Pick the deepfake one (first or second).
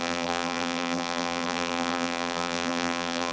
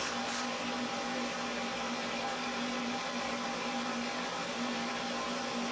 first